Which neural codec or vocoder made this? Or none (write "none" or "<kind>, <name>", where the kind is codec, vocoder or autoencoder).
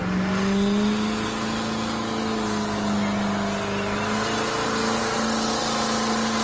none